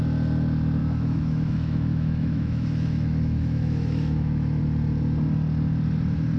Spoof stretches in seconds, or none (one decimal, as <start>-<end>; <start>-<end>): 0.8-4.6